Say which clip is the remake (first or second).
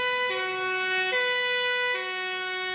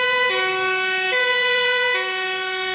second